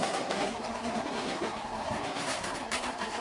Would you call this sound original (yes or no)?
no